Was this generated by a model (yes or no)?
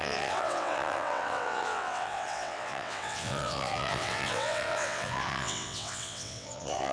yes